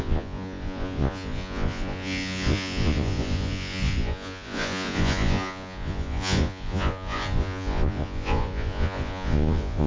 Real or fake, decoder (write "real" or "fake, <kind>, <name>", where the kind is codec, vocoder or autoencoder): fake, vocoder, Vocos